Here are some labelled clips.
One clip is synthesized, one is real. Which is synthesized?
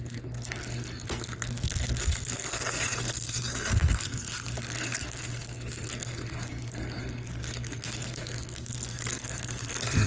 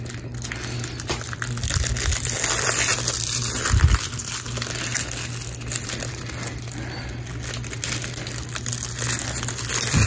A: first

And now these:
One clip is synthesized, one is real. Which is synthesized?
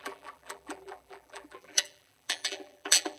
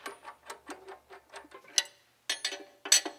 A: first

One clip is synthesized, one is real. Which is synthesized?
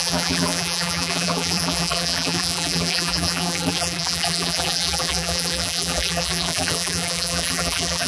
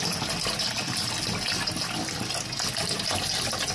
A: first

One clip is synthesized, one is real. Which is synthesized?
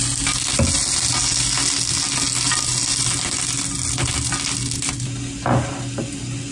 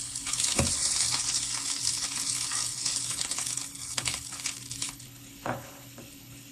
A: second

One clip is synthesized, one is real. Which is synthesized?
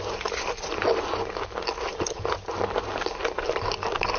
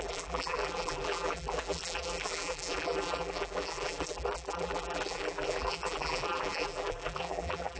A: second